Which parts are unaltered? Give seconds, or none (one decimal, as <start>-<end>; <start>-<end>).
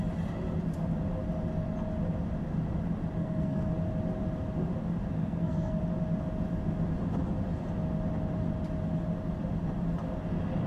0.0-3.2; 3.7-5.2; 5.8-10.7